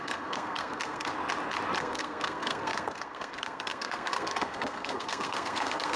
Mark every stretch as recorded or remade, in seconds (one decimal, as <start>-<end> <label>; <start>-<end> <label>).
0.0-1.1 remade; 1.1-1.8 recorded; 1.8-6.0 remade